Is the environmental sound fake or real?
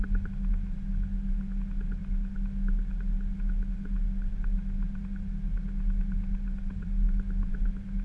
real